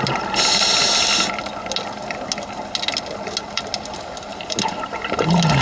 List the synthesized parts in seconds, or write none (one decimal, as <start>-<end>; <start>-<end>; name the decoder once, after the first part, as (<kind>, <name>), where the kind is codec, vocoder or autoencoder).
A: none